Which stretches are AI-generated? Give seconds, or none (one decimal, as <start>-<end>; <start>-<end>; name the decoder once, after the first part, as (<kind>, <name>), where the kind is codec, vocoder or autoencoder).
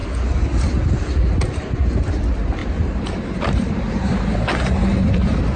2.6-5.6 (vocoder, BigVGAN v2)